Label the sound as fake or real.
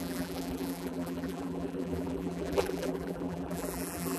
fake